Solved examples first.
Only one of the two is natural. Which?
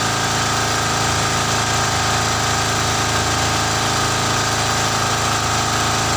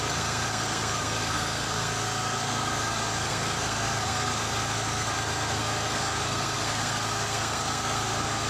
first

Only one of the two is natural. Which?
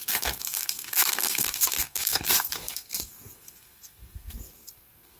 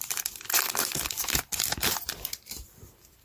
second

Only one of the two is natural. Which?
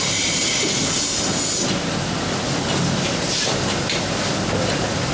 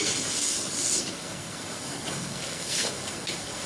first